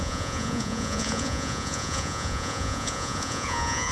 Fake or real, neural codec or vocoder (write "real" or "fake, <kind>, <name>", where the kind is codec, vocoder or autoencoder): fake, vocoder, Vocos